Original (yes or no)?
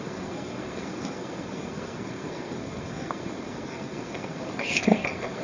no